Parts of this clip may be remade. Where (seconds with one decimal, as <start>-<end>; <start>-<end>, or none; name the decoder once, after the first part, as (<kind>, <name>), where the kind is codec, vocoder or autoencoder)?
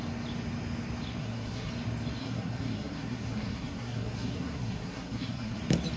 1.2-1.7 (codec, SNAC); 2.2-5.6